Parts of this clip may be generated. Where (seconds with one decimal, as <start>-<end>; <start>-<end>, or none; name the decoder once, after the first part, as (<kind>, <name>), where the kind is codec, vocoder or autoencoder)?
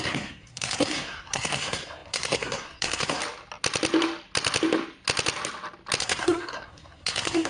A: 0.0-3.2 (codec, SNAC); 6.0-7.5